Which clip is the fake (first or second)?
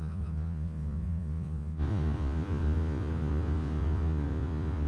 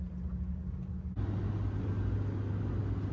first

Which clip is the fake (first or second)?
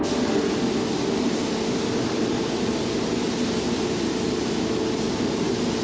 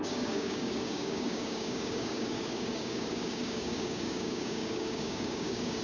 second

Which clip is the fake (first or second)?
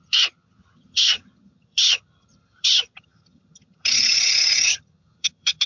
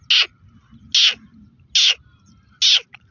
first